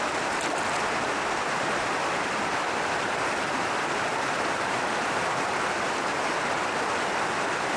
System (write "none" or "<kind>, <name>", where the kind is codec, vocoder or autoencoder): none